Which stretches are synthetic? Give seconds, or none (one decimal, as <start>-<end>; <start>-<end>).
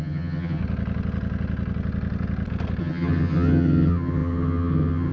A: 0.0-0.6; 2.8-5.1